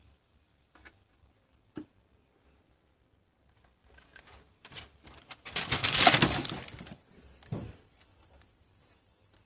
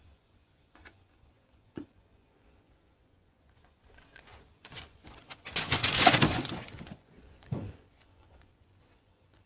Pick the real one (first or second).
first